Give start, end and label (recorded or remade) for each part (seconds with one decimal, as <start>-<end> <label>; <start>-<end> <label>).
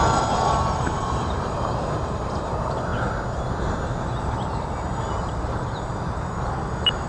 0.0-2.9 remade; 2.9-3.7 recorded; 3.7-7.1 remade